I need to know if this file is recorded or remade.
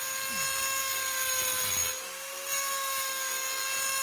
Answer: recorded